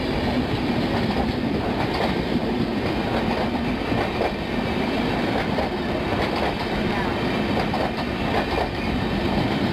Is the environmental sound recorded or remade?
recorded